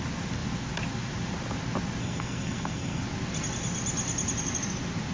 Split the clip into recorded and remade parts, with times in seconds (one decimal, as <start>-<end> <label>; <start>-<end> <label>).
0.0-2.0 recorded; 2.0-3.0 remade; 3.0-5.1 recorded